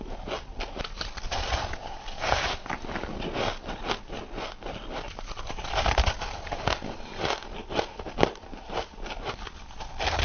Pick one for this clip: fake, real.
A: real